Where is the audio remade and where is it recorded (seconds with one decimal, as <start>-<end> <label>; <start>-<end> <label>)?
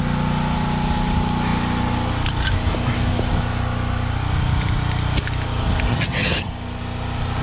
0.0-5.9 recorded; 5.9-6.5 remade; 6.5-7.4 recorded